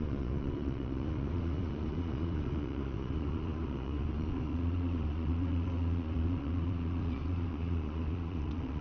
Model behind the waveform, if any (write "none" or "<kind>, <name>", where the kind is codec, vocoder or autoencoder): vocoder, Vocos